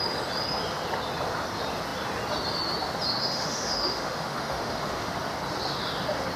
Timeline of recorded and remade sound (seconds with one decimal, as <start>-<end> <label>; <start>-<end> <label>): 0.0-3.2 recorded; 3.2-5.1 remade; 5.1-6.4 recorded